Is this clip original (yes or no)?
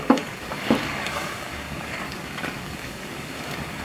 no